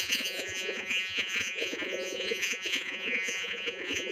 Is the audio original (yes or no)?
no